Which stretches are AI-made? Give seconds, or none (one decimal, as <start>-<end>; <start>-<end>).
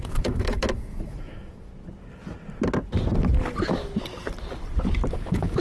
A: 0.0-1.7; 5.1-5.6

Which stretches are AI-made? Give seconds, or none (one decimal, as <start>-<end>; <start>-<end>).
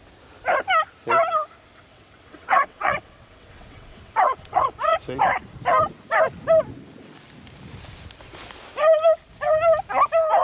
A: 1.9-5.0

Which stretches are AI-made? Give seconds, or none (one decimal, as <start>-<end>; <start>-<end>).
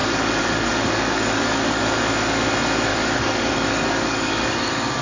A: 0.0-1.8; 2.9-5.0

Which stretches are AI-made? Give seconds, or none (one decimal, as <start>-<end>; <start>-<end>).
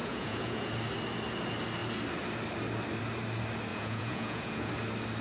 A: 0.0-0.7; 3.7-4.7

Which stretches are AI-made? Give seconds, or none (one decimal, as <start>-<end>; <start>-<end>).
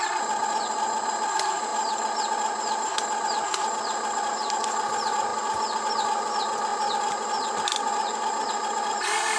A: none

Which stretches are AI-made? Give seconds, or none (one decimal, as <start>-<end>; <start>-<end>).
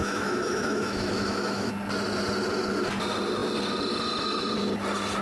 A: 0.0-1.7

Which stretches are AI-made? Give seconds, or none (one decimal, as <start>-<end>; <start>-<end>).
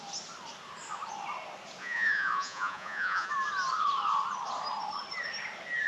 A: 1.8-3.3